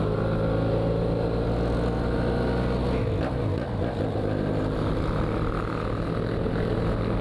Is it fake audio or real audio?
real